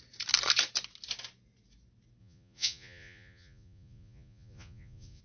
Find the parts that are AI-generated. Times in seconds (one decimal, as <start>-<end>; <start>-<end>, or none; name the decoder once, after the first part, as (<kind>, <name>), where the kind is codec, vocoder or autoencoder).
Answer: 2.2-5.2 (vocoder, Vocos)